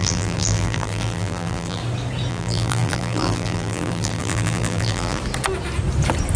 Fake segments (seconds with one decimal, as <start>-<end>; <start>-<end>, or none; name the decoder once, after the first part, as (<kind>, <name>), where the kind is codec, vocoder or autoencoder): 0.0-1.8 (vocoder, BigVGAN v2); 2.3-5.2